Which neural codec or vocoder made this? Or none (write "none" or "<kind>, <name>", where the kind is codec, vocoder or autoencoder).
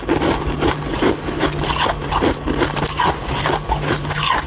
none